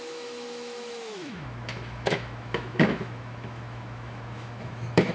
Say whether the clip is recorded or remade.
remade